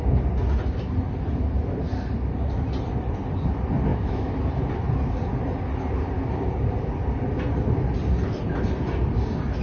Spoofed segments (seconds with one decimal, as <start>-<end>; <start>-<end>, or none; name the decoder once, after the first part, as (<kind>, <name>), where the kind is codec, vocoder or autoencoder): 3.9-4.4 (autoencoder, DAC-VAE)